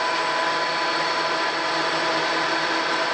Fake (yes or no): no